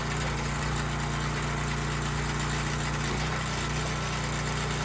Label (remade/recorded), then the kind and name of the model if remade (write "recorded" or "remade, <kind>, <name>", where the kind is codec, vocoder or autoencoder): recorded